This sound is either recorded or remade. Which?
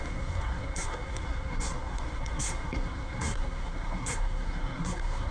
remade